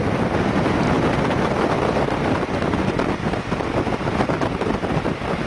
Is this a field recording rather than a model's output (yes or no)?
yes